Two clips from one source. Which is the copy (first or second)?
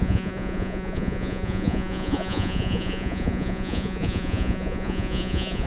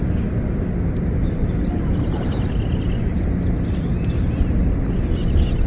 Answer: first